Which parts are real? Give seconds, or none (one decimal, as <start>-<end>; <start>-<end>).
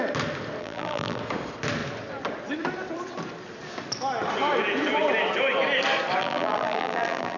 0.0-0.6; 1.2-6.2